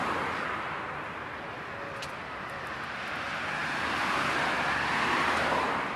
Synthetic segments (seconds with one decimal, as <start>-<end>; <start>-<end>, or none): none